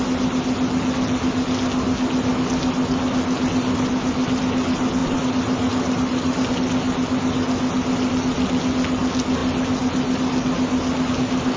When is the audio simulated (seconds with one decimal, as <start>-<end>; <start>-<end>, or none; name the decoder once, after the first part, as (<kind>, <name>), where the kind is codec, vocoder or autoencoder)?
5.0-6.5 (vocoder, BigVGAN v2)